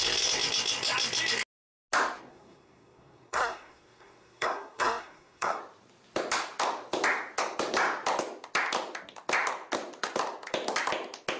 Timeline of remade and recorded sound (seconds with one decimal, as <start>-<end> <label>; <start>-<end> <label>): 0.0-2.3 recorded; 2.3-5.6 remade; 5.6-11.4 recorded